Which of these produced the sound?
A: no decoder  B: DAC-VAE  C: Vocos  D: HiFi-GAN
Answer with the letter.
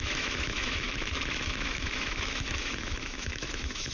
B